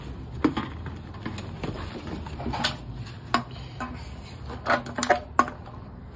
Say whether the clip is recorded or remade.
recorded